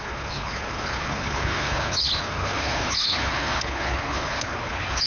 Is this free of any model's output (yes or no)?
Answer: no